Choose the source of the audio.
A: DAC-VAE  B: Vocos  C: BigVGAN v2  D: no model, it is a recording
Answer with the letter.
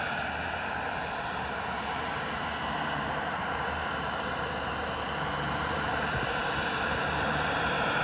C